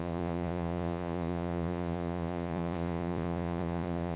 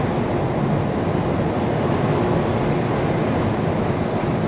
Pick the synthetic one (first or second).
first